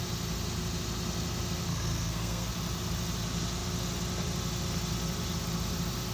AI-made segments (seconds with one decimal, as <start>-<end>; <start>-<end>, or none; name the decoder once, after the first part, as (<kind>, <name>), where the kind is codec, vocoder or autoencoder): 1.7-2.5 (codec, SNAC)